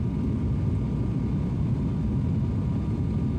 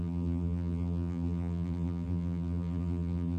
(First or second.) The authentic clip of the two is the first